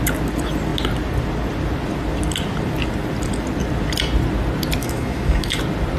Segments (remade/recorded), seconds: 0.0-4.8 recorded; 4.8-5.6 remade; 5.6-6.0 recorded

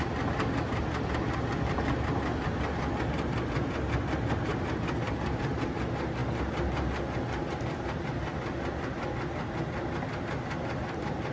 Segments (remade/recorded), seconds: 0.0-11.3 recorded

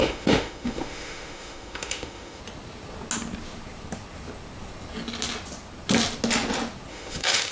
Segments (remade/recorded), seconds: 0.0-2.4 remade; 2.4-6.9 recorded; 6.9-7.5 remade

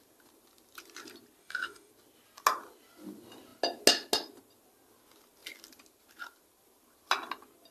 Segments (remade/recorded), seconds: 0.0-1.4 recorded; 1.4-1.9 remade; 1.9-7.7 recorded

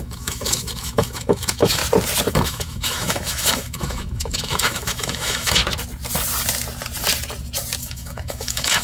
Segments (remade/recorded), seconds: 0.0-1.8 remade; 1.8-2.3 recorded; 2.3-5.6 remade; 5.6-7.8 recorded; 7.8-8.8 remade

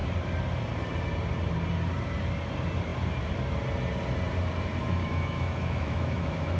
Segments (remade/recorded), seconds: 0.0-4.8 recorded; 4.8-6.6 remade

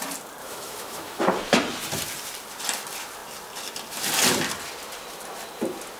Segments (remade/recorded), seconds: 0.0-0.4 recorded; 0.4-1.2 remade; 1.2-6.0 recorded